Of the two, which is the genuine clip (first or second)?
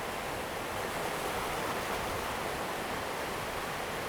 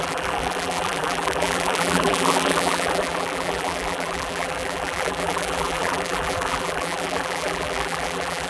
first